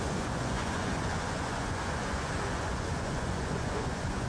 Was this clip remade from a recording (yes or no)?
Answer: yes